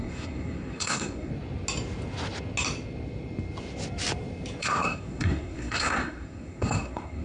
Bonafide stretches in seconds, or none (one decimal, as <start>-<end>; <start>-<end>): 1.3-4.6

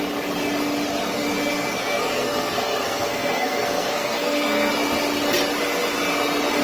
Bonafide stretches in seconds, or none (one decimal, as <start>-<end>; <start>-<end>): 0.0-1.5; 4.7-6.6

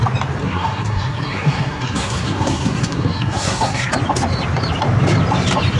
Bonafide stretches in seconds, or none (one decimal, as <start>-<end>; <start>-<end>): 0.0-0.4; 3.9-5.8

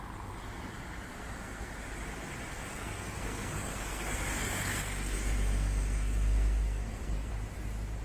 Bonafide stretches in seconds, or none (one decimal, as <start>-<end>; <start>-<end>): 0.0-1.1; 1.7-2.5; 7.3-8.0

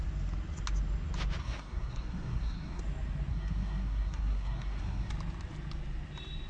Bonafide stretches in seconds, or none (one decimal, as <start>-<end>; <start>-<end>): 0.0-1.4; 2.8-3.3; 5.1-6.5

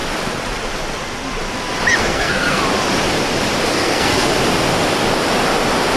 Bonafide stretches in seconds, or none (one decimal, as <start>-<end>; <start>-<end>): 0.0-2.0; 2.6-3.7; 4.3-6.0

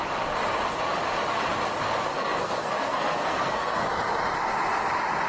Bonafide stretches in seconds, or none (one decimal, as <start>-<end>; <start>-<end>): 0.0-2.1; 3.9-5.3

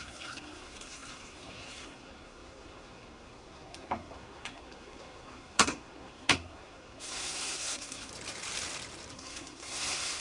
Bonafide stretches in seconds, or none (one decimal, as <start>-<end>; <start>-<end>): 8.1-9.1